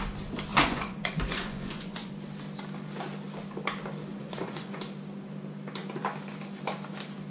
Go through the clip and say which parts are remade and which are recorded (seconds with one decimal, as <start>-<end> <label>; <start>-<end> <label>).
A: 0.0-0.5 recorded; 0.5-2.1 remade; 2.1-4.1 recorded; 4.1-4.8 remade; 4.8-7.3 recorded